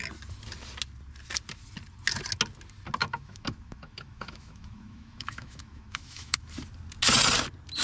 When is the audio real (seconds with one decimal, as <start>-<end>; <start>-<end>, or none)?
0.0-3.0; 6.5-7.8